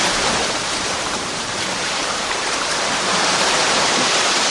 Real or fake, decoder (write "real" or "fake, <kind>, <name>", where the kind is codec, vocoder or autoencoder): fake, vocoder, BigVGAN v2